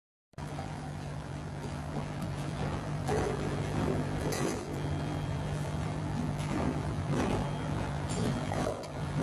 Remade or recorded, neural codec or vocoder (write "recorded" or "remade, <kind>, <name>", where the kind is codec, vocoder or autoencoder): remade, vocoder, BigVGAN v2